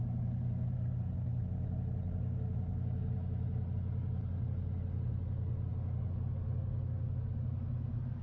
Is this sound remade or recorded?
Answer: recorded